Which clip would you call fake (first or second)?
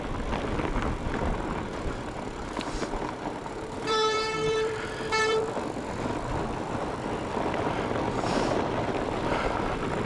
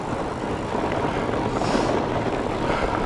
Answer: first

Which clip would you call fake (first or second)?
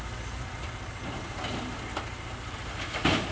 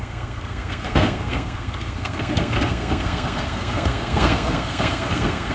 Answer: second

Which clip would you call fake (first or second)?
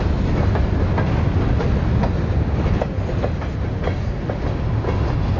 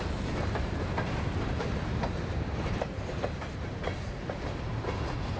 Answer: second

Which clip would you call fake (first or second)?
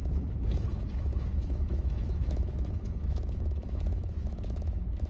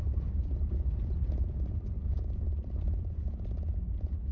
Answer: first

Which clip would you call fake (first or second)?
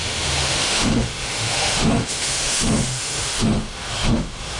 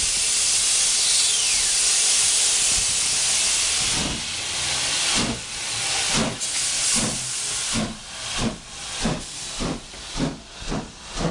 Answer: first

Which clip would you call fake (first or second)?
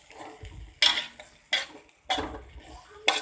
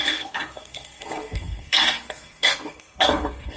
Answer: second